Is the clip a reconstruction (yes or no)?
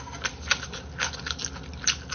no